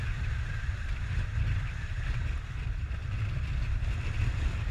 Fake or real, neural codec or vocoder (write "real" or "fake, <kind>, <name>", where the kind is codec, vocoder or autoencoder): real